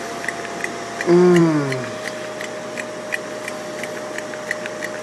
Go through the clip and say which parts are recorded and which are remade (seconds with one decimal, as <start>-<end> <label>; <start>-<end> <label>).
0.0-5.0 recorded